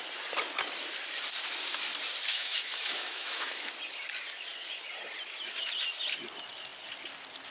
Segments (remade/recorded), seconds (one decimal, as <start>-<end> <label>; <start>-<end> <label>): 0.0-2.3 recorded; 2.3-3.7 remade; 3.7-7.5 recorded